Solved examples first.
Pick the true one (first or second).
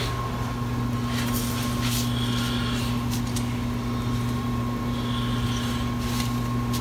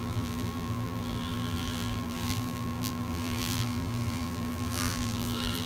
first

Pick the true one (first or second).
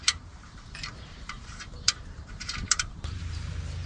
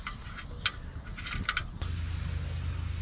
second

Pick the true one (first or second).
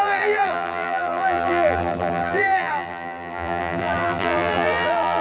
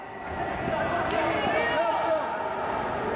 second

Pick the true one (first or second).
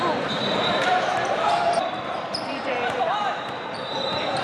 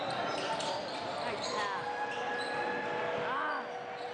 second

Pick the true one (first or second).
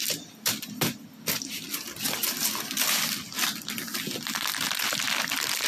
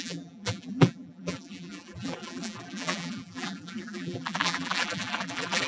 first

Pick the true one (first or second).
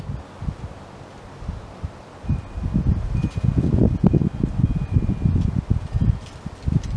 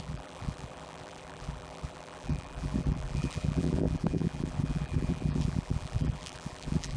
first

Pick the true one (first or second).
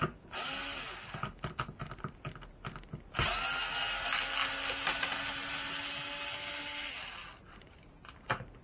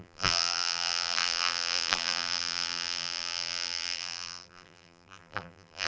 first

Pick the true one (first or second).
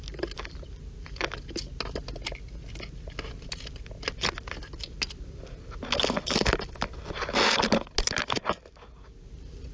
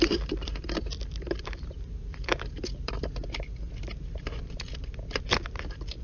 first